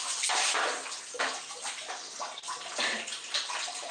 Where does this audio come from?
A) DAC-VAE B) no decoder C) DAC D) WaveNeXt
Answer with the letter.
B